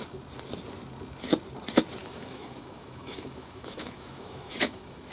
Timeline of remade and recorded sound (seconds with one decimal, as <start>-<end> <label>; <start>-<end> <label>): 0.0-2.0 recorded; 2.0-5.1 remade